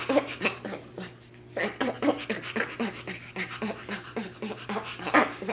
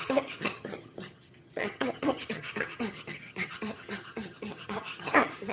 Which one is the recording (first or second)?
first